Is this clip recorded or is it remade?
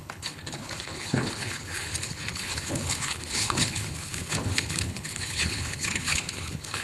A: remade